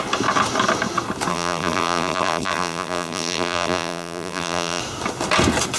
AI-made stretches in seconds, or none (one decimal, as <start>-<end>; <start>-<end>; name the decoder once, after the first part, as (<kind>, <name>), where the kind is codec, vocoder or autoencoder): 1.3-4.8 (vocoder, BigVGAN v2)